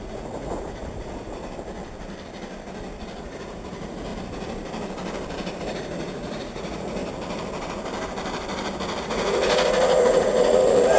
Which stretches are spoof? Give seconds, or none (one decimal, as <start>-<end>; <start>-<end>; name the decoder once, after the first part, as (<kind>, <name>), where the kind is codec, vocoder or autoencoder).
0.0-1.4 (vocoder, Vocos); 3.2-4.1; 5.6-7.0; 9.0-11.0